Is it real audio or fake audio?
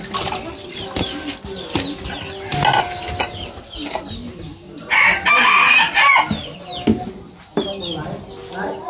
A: real